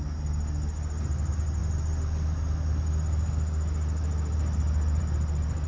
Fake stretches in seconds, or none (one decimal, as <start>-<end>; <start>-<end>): none